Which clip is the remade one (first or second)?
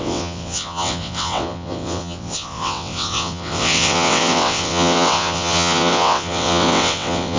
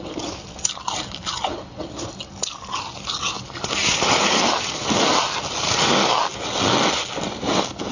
first